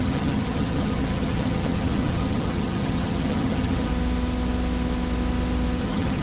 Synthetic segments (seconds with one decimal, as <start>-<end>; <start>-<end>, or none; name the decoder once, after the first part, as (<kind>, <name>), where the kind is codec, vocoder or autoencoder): 0.0-3.9 (vocoder, HiFi-GAN); 5.8-6.2